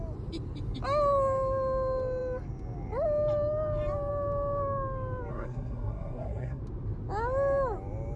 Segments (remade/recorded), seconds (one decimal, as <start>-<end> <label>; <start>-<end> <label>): 0.0-5.3 recorded; 5.3-6.6 remade; 6.6-8.2 recorded